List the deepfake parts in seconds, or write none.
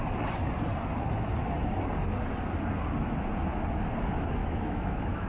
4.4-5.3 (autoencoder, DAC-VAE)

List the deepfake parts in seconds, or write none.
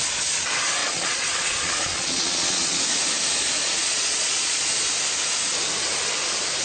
0.8-2.8 (vocoder, Vocos); 3.6-4.8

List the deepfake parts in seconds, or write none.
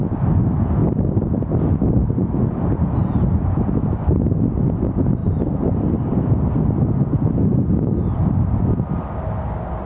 0.8-1.8 (vocoder, BigVGAN v2); 5.2-6.5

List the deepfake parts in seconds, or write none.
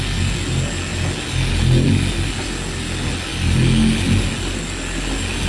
none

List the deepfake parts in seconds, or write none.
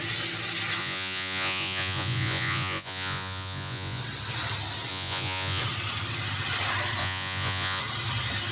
0.8-4.0 (vocoder, Vocos); 4.9-5.6; 7.0-7.8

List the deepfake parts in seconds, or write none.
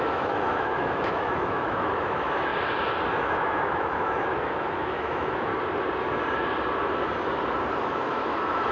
0.0-2.5 (autoencoder, DAC-VAE); 3.2-5.5; 7.8-8.7